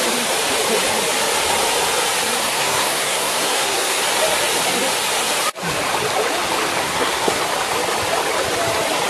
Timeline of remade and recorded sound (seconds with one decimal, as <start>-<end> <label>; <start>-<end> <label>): 0.0-2.4 recorded; 2.4-4.0 remade; 4.0-6.8 recorded; 6.8-7.4 remade; 7.4-9.1 recorded